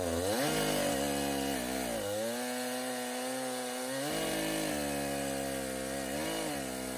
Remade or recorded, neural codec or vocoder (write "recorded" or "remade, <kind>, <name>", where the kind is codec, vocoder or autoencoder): recorded